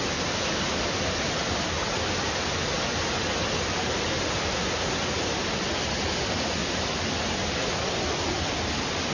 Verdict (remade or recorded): recorded